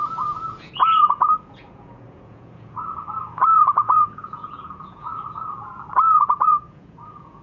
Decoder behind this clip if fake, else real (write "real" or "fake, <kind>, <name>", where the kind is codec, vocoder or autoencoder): fake, vocoder, Vocos